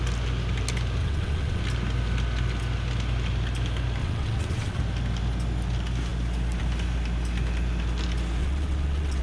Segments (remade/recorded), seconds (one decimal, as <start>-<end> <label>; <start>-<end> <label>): 0.0-1.0 recorded; 1.0-1.6 remade; 1.6-4.0 recorded; 4.0-4.8 remade; 4.8-8.4 recorded; 8.4-9.2 remade